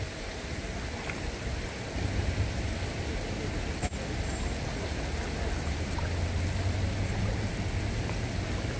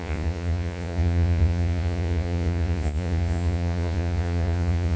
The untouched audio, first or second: first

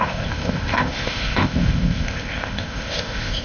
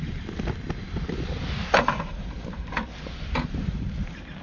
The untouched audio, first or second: second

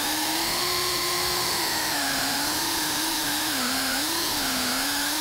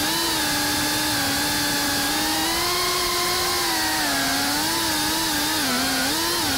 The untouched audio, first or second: second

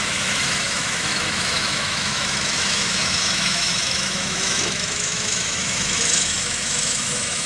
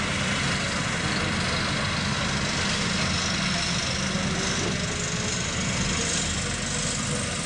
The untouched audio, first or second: second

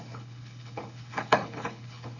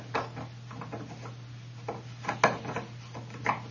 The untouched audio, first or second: second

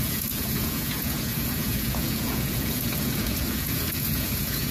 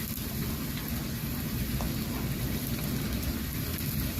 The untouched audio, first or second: second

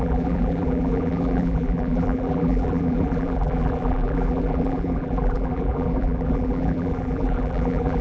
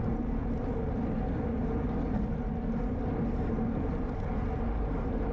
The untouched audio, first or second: second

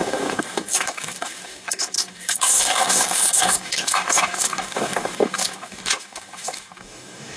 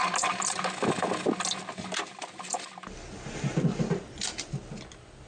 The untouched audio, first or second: second